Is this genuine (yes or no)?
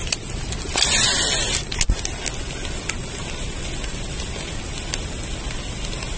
yes